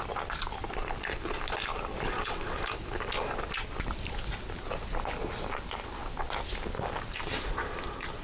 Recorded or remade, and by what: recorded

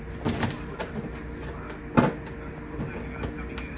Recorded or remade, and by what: recorded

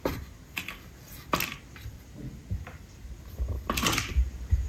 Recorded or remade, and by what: recorded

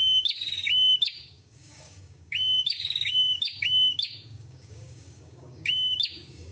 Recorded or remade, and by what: remade, codec, DAC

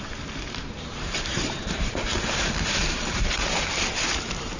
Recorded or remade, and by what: remade, vocoder, BigVGAN v2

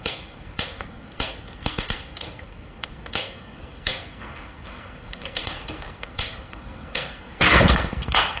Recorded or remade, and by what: remade, codec, SNAC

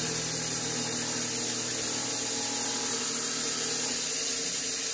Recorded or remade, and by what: recorded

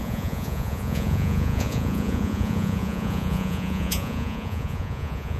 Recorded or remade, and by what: remade, vocoder, Vocos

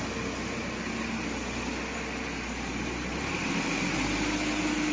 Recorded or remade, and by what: recorded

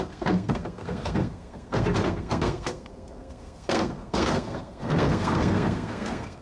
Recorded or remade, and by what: remade, codec, SNAC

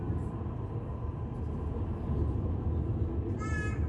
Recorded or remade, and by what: recorded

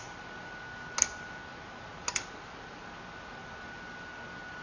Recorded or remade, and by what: recorded